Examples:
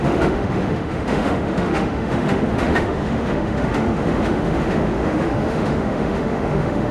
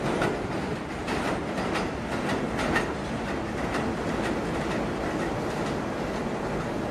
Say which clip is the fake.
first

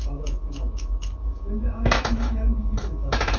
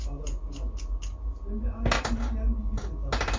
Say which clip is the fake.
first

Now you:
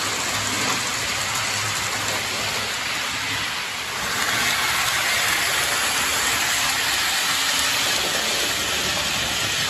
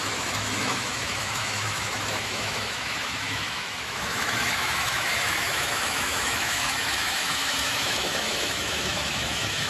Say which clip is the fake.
second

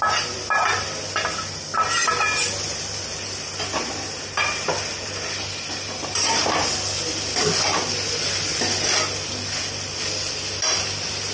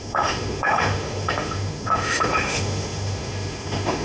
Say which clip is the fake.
second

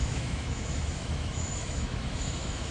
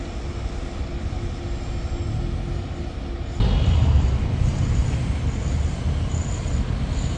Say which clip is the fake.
first